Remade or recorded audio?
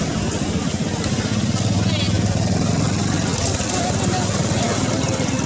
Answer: recorded